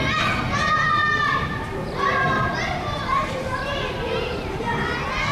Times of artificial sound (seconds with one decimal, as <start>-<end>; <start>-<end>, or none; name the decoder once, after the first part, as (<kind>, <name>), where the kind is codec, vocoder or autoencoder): 1.0-3.9 (vocoder, BigVGAN v2)